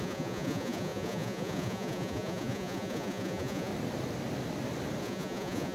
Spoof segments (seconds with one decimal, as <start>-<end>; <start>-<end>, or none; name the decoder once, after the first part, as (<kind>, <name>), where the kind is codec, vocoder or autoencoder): 0.0-3.7 (vocoder, Vocos); 5.0-5.7